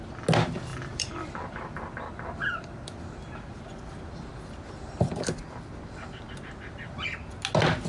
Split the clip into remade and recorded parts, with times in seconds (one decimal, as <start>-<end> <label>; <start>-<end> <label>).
0.0-0.7 recorded; 0.7-3.6 remade; 3.6-4.3 recorded; 4.3-6.3 remade; 6.3-7.9 recorded